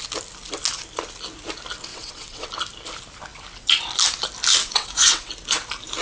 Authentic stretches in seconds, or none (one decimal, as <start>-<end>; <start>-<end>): 0.0-1.9; 2.5-4.6; 5.3-6.0